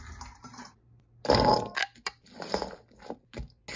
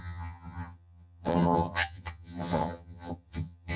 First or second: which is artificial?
second